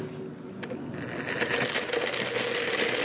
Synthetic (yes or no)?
no